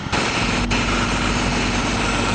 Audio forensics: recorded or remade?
recorded